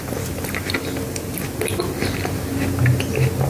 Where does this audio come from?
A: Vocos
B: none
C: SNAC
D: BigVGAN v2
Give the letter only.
B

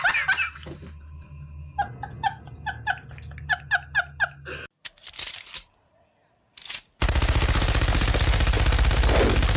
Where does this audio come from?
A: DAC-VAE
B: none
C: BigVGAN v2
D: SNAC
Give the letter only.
B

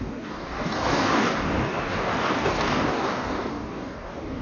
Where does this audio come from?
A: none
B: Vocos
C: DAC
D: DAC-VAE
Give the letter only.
C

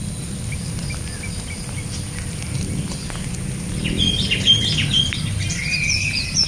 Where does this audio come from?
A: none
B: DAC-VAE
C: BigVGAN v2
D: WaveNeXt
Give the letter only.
A